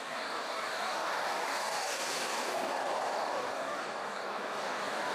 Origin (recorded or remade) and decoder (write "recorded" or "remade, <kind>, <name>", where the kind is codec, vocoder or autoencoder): remade, codec, DAC